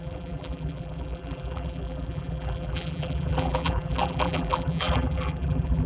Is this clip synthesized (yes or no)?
yes